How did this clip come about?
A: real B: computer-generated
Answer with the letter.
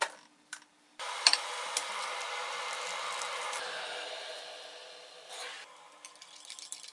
B